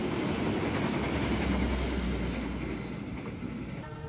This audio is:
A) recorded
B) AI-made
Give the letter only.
A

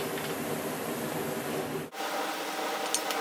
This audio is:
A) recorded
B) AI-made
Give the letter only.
A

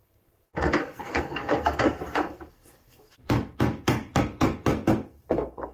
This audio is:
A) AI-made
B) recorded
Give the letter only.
A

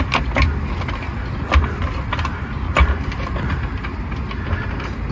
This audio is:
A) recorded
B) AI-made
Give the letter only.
A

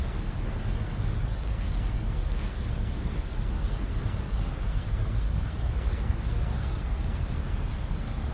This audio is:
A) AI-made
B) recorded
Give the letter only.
A